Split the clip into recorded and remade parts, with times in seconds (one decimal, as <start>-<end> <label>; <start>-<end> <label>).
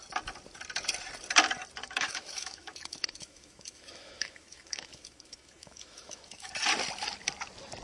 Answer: 0.0-1.8 recorded; 1.8-6.5 remade; 6.5-7.8 recorded